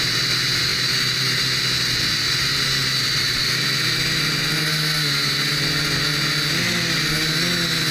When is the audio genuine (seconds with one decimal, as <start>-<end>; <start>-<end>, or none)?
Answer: 0.0-0.7; 1.4-2.8; 3.6-7.9